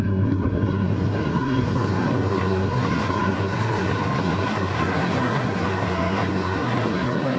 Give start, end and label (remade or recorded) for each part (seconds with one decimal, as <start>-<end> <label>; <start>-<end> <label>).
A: 0.0-7.4 remade